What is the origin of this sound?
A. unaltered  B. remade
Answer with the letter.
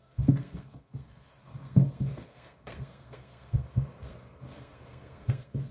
B